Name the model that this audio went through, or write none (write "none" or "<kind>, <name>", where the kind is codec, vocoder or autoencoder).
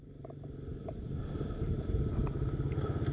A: none